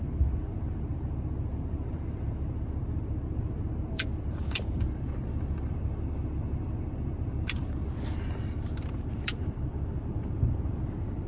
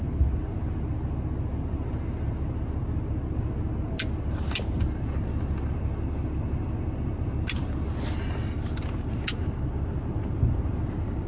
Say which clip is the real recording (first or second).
second